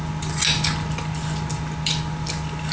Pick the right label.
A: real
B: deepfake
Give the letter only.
A